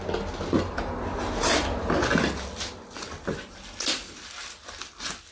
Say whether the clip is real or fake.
real